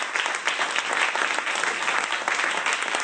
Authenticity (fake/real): real